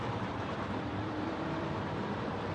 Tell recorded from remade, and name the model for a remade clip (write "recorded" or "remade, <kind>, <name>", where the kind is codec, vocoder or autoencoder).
remade, vocoder, BigVGAN v2